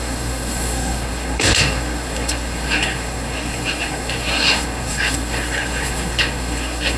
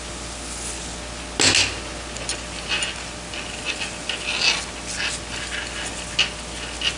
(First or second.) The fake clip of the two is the first